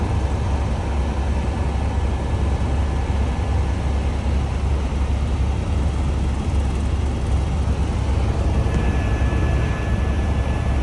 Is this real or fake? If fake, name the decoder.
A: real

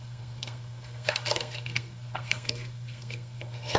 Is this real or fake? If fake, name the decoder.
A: fake, codec, SNAC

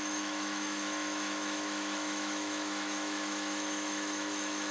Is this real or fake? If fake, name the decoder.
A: fake, autoencoder, DAC-VAE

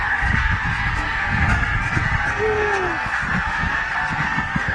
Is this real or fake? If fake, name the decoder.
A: fake, codec, SNAC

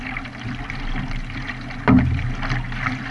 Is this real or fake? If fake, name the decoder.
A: real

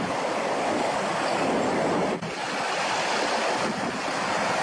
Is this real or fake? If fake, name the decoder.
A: real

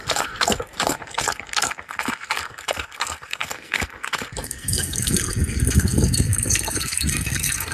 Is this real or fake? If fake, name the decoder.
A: fake, codec, SNAC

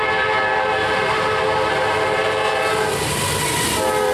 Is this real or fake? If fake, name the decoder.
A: real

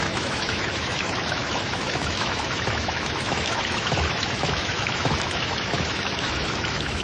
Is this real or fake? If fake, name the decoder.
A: fake, autoencoder, DAC-VAE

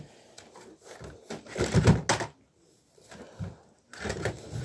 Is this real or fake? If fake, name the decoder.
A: real